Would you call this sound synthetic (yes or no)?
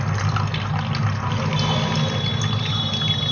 no